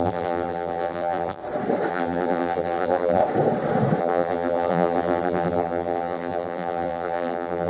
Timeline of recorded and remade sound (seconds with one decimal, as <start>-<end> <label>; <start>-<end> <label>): 0.0-1.4 remade; 1.4-1.9 recorded; 1.9-3.2 remade; 3.2-4.0 recorded; 4.0-7.7 remade

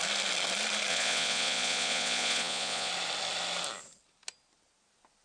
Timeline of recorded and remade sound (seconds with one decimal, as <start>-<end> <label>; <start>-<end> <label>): 0.0-0.9 recorded; 0.9-2.9 remade; 2.9-5.2 recorded

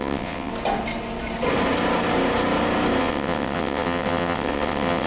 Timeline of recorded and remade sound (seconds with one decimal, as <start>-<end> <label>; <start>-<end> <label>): 0.0-0.5 remade; 0.5-3.0 recorded; 3.0-5.1 remade